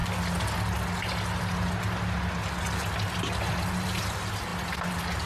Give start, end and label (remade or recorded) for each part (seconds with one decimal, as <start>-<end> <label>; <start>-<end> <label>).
0.0-5.3 recorded